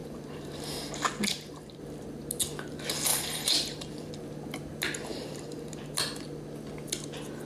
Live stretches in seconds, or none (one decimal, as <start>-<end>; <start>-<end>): 0.7-1.3; 1.8-3.1; 4.1-5.1; 5.8-7.5